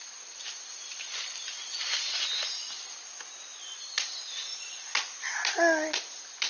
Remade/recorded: recorded